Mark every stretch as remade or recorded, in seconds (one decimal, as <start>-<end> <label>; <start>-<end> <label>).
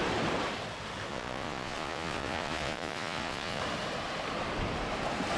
0.0-1.1 recorded; 1.1-3.6 remade; 3.6-5.4 recorded